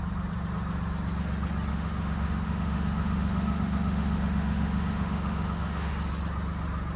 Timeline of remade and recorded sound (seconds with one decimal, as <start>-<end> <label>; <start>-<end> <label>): 0.0-1.7 recorded; 1.7-5.9 remade; 5.9-7.0 recorded

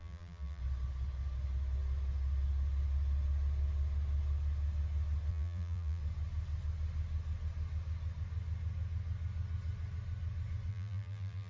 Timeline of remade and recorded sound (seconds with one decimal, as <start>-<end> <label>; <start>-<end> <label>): 0.0-0.6 remade; 0.6-5.3 recorded; 5.3-6.0 remade; 6.0-10.7 recorded; 10.7-11.5 remade

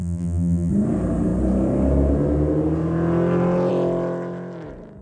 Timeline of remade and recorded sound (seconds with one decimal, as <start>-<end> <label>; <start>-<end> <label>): 0.0-0.7 remade; 0.7-5.0 recorded

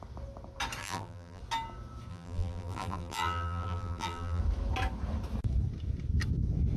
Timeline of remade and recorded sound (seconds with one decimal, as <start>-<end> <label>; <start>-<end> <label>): 0.0-0.8 recorded; 0.8-1.4 remade; 1.4-2.1 recorded; 2.1-4.4 remade; 4.4-6.8 recorded